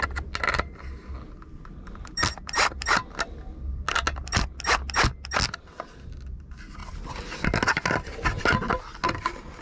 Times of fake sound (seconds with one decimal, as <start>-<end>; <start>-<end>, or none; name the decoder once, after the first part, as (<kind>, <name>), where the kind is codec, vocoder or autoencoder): none